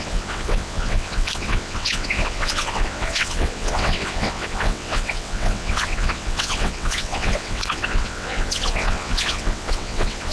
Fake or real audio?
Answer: fake